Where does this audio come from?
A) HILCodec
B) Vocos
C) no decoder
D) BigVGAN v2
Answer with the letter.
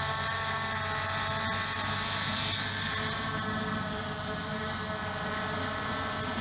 C